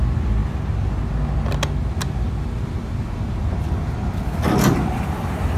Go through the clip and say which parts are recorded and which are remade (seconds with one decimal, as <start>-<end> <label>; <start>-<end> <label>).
0.0-5.6 recorded